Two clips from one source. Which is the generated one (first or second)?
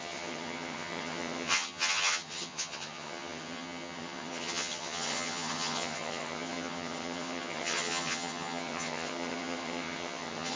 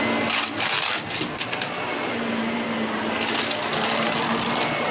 first